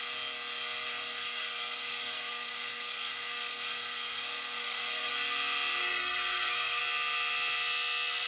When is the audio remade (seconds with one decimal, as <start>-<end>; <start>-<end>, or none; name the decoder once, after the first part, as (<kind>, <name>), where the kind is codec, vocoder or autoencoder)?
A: 0.9-5.1 (codec, SNAC); 5.8-6.8